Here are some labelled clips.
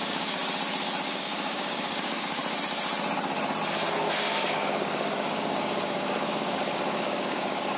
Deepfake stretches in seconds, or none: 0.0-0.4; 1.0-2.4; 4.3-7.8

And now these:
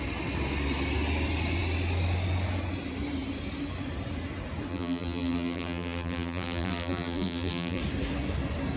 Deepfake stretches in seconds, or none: 4.7-7.8

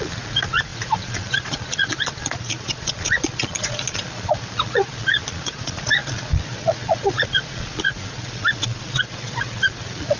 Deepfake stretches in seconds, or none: 0.0-10.2

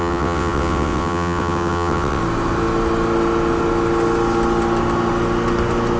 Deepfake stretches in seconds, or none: 0.0-2.2

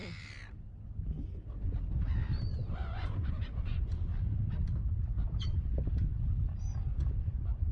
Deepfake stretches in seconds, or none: 2.5-4.1; 7.2-7.7

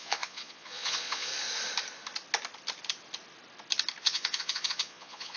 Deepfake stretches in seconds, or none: 0.0-1.3; 4.0-5.4

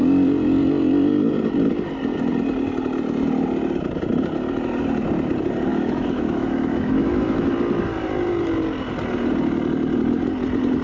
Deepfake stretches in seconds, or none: 5.7-7.5

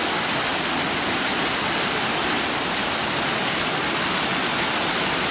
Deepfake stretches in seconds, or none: none